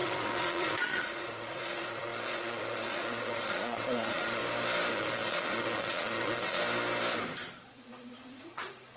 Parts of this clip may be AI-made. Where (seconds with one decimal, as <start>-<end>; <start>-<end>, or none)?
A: 0.0-4.4; 4.9-6.6; 7.5-9.0